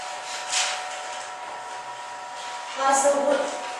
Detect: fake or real real